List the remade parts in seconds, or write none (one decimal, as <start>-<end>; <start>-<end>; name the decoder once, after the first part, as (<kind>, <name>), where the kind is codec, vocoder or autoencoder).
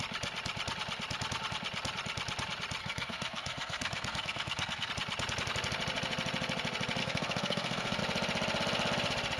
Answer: 2.8-4.9 (codec, SNAC); 7.0-8.0